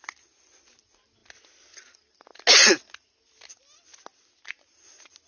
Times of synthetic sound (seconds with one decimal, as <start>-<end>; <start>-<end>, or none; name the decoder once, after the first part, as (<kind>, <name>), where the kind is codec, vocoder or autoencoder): none